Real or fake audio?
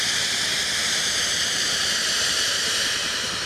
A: fake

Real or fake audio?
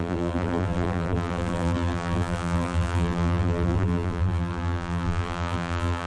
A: fake